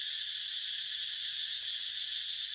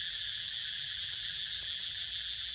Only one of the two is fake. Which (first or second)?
second